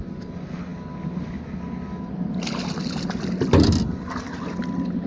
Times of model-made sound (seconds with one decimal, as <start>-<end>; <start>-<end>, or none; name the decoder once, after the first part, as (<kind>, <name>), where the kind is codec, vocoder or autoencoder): none